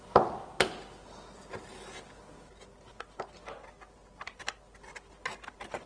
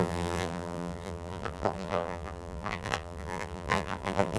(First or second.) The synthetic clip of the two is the second